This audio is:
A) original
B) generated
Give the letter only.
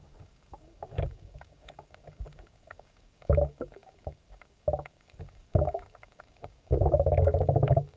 B